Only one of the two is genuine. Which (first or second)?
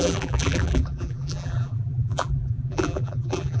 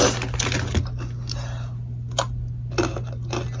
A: second